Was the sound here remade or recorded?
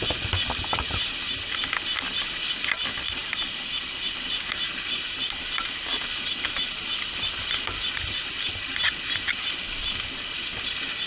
recorded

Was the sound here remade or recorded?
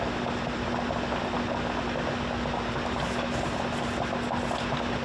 recorded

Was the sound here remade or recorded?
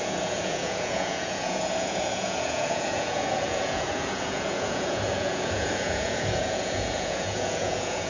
remade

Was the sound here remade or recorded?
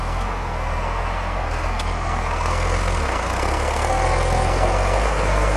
remade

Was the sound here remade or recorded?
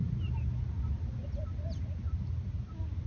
recorded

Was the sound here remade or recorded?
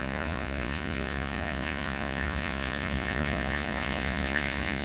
remade